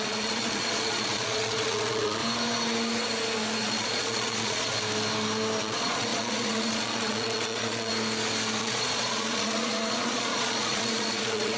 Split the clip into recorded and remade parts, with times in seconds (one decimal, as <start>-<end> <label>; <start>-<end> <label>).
0.0-2.2 remade; 2.2-3.6 recorded; 3.6-4.7 remade; 4.7-5.6 recorded; 5.6-7.9 remade; 7.9-8.6 recorded; 8.6-11.6 remade